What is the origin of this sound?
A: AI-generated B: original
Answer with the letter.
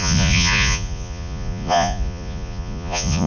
A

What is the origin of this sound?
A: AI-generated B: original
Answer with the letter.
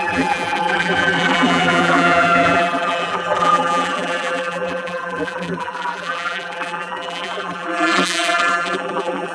A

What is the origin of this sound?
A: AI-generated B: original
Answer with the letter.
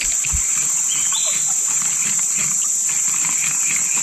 A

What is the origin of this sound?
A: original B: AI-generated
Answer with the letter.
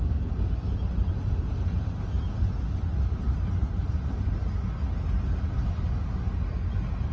A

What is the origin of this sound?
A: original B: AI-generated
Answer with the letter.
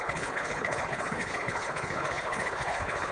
B